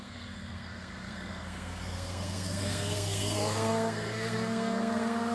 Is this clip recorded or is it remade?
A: remade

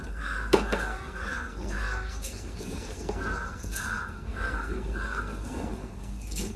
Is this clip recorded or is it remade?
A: remade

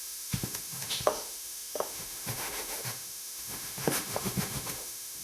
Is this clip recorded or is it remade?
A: remade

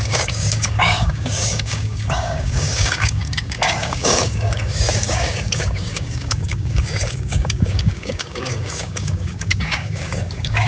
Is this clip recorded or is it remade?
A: remade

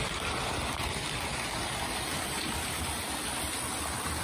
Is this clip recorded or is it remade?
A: recorded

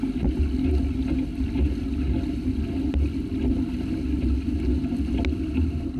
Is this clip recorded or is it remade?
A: recorded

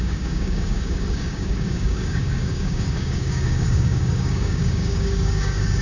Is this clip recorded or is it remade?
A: remade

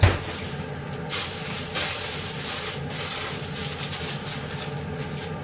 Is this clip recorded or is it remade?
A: recorded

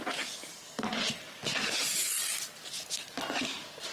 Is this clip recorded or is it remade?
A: recorded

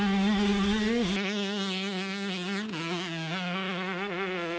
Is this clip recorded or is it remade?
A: recorded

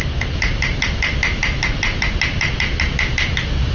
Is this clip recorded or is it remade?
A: recorded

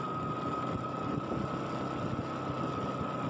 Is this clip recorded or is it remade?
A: recorded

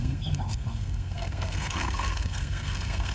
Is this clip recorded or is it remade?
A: remade